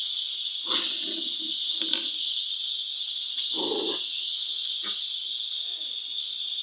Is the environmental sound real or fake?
real